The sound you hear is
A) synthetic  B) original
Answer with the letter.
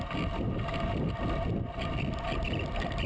B